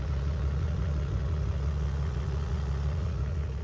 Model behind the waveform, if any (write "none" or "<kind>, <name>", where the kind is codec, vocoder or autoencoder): vocoder, Vocos